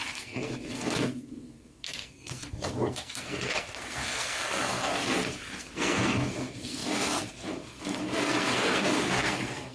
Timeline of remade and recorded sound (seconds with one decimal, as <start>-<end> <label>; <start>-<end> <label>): 0.0-9.7 remade